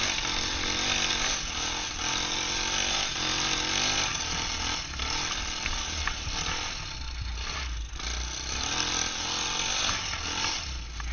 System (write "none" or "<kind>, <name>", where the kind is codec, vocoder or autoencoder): none